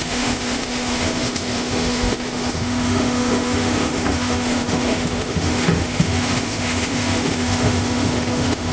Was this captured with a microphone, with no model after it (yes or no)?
no